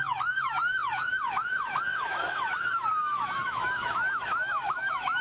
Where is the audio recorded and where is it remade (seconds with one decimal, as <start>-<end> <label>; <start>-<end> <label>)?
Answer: 0.0-5.2 remade